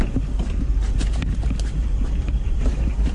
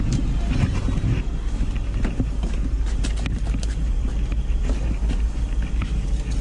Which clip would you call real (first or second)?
second